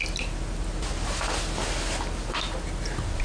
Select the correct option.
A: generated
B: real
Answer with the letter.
B